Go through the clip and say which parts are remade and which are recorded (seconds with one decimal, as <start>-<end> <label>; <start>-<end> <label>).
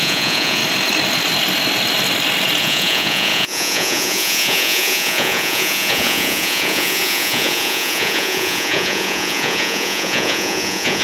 0.0-0.6 remade; 0.6-2.6 recorded; 2.6-11.0 remade